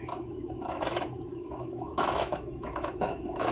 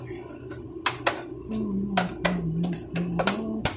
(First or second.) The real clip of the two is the second